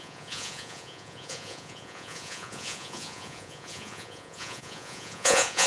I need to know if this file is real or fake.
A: fake